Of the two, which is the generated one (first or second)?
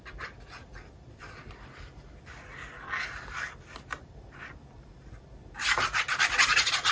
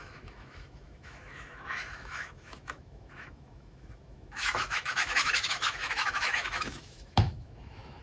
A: second